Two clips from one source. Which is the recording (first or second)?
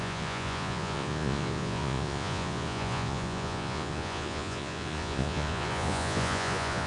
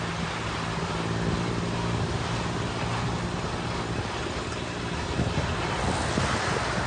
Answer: second